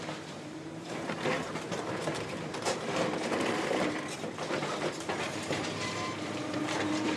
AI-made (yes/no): yes